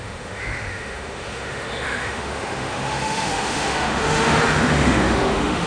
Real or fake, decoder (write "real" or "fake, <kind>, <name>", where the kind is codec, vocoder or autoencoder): fake, autoencoder, DAC-VAE